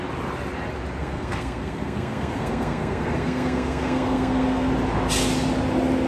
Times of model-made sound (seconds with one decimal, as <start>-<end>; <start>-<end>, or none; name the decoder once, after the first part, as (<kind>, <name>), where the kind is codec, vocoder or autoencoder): 1.0-4.7 (codec, SNAC)

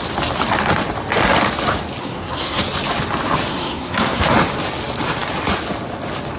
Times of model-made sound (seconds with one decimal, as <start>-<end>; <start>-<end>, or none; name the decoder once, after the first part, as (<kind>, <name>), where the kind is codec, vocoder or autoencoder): 2.0-2.6 (codec, SNAC); 3.5-4.2

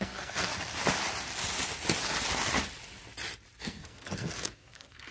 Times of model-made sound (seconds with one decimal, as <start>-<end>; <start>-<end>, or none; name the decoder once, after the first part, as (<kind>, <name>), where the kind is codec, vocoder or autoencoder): 0.0-0.5 (codec, SNAC); 3.6-5.1

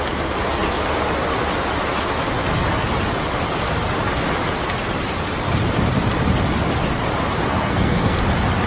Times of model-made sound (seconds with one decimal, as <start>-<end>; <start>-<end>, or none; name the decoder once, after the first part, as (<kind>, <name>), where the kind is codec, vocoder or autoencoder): 7.5-8.2 (codec, SNAC)